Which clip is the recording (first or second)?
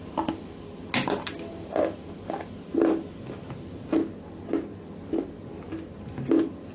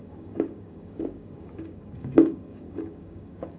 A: first